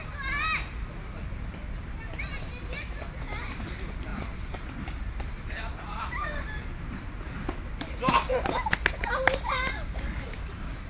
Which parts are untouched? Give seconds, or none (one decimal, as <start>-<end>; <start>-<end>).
0.0-4.1; 6.1-10.9